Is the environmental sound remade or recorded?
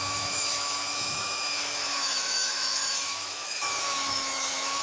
remade